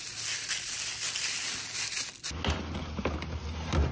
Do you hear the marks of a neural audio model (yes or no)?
no